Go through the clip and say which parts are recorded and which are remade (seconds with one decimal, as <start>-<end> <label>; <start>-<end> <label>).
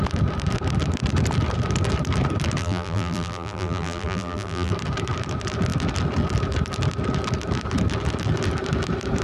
0.0-2.6 recorded; 2.6-4.7 remade; 4.7-9.2 recorded